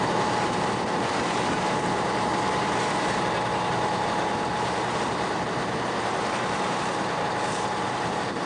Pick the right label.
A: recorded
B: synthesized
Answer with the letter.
B